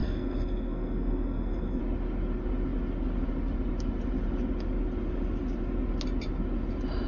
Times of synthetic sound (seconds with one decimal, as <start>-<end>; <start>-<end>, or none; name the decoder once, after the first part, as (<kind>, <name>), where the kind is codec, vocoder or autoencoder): 0.0-1.8 (codec, SNAC)